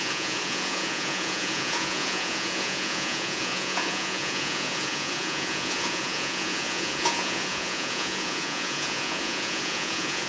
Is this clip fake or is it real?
fake